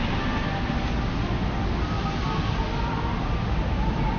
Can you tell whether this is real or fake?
real